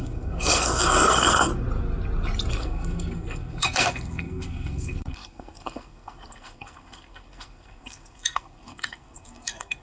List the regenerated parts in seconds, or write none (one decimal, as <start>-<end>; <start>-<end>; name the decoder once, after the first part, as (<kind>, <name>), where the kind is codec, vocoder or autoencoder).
0.0-1.5 (codec, SNAC); 2.5-9.8